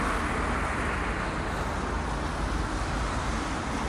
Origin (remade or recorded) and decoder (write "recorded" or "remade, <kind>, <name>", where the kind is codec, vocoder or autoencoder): recorded